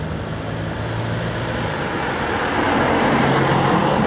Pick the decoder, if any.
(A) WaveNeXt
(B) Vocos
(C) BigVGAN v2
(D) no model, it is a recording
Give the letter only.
D